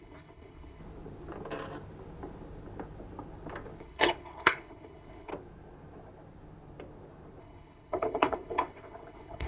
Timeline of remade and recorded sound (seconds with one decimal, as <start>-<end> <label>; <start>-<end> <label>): 0.0-0.8 remade; 0.8-3.8 recorded; 3.8-5.3 remade; 5.3-7.4 recorded; 7.4-9.5 remade